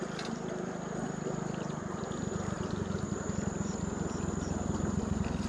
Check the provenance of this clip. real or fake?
real